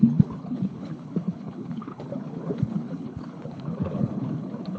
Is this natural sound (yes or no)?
no